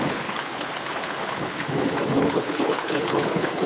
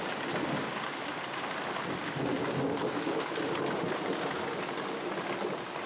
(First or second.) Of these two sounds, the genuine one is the second